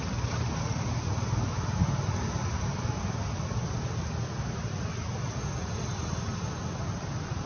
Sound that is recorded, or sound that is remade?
recorded